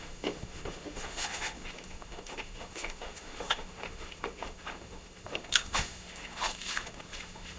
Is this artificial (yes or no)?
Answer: yes